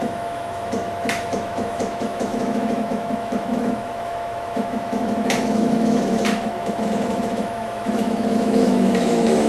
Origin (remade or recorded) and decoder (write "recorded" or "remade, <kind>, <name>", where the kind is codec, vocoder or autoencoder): remade, autoencoder, DAC-VAE